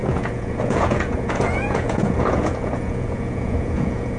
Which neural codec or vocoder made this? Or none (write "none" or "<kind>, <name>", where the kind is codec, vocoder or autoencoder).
vocoder, Vocos